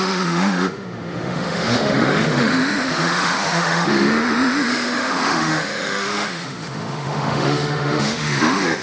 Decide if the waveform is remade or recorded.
remade